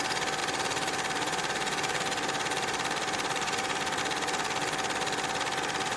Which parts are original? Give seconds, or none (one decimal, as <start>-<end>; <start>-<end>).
0.0-0.4; 4.0-6.0